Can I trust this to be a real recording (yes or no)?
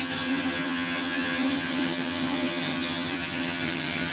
no